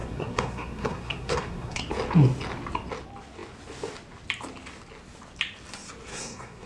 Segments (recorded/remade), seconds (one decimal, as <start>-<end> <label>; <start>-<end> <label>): 0.0-1.8 remade; 1.8-6.1 recorded; 6.1-6.7 remade